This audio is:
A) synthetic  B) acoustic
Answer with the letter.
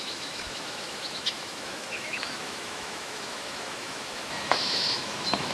A